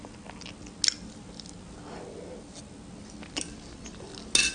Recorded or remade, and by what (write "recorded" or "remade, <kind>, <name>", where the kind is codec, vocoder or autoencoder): recorded